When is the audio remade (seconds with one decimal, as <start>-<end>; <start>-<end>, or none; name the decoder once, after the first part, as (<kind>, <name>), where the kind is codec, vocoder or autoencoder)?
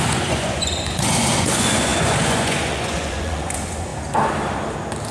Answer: 0.0-3.9 (vocoder, Vocos)